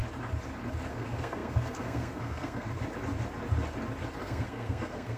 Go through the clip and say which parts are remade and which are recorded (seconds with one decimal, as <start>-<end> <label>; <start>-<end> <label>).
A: 0.0-0.9 recorded; 0.9-2.7 remade; 2.7-4.2 recorded; 4.2-5.2 remade